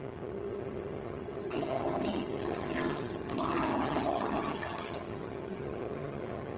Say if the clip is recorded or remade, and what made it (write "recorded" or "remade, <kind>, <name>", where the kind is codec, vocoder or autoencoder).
remade, vocoder, HiFi-GAN